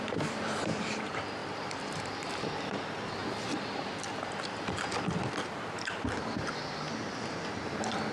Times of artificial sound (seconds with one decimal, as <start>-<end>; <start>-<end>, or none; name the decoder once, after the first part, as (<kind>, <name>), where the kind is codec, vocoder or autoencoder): 0.0-3.2 (vocoder, BigVGAN v2); 6.2-8.1